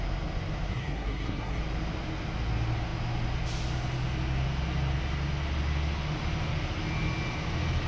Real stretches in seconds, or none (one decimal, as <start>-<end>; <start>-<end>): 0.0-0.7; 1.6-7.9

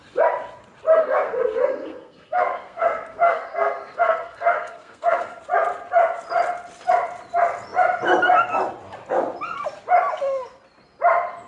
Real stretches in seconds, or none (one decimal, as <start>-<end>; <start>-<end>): 0.0-1.0; 5.4-11.5

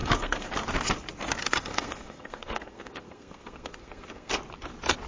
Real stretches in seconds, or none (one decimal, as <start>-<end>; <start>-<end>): 0.5-1.4; 4.4-5.1

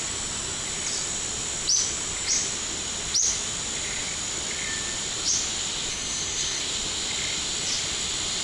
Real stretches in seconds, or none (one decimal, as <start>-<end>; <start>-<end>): 0.0-5.9; 6.6-8.4

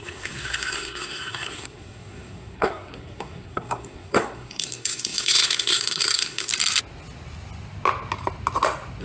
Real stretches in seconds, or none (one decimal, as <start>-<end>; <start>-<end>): 6.5-9.0